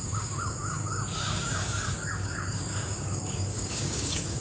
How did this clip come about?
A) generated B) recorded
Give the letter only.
A